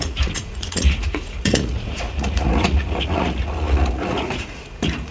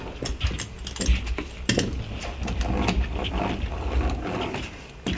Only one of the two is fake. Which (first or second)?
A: first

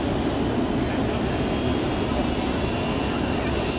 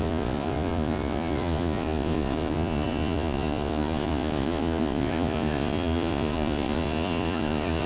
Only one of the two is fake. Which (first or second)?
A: second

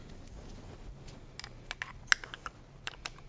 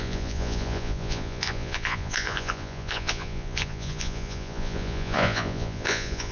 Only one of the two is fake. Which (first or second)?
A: second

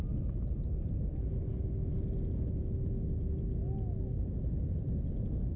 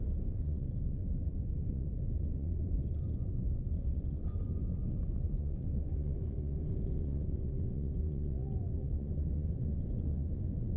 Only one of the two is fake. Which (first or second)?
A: second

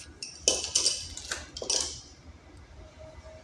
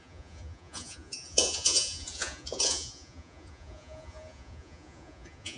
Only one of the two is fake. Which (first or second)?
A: second